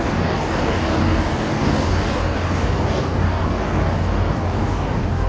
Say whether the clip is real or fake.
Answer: fake